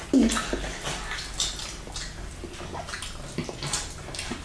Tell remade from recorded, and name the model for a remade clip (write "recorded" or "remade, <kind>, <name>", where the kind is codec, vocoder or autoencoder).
recorded